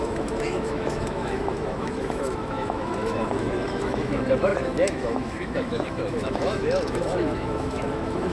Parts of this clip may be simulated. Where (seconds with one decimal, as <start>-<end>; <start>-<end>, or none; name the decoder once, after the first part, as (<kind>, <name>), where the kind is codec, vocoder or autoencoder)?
0.0-8.3 (autoencoder, DAC-VAE)